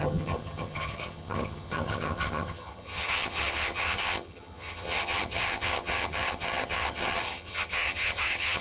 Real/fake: fake